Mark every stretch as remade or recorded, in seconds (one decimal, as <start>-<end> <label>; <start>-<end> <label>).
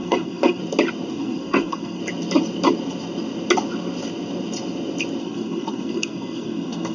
0.0-0.6 remade; 0.6-1.1 recorded; 1.1-2.0 remade; 2.0-5.2 recorded; 5.2-6.9 remade